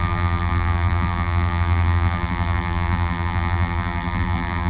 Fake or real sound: fake